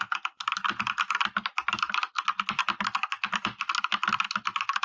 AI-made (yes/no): no